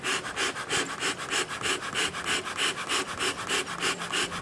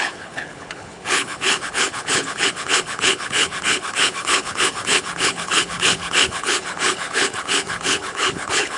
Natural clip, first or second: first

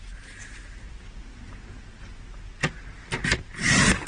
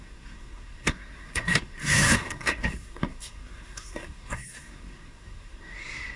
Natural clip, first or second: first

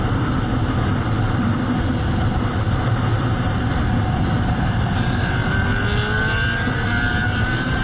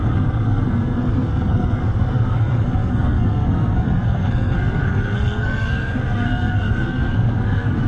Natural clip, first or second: first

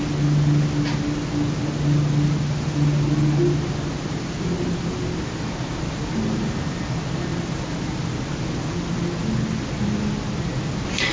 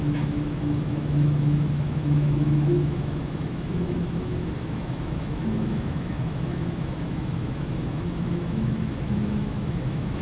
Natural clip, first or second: first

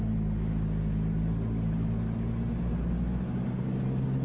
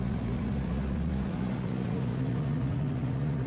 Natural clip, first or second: first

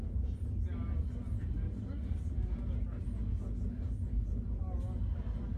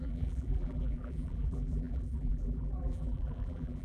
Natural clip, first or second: first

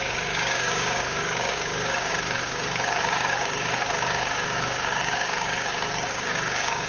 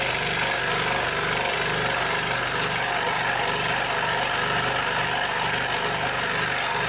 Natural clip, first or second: second